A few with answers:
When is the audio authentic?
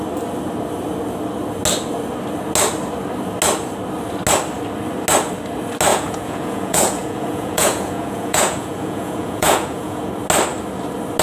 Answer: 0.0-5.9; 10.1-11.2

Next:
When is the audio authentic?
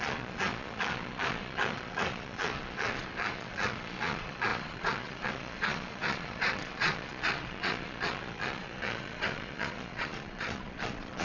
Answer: none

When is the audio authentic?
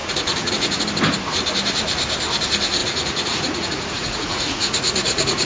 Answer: 0.8-2.8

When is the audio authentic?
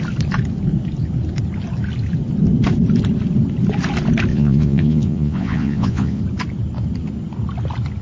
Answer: 0.0-4.3; 6.2-8.0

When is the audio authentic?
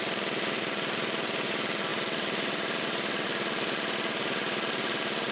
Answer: 0.0-5.3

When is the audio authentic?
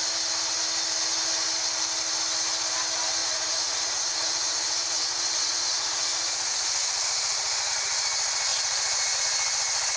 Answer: 0.0-3.2; 7.7-8.5; 9.2-10.0